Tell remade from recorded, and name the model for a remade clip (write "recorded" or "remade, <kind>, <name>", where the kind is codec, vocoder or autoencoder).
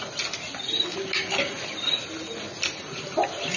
recorded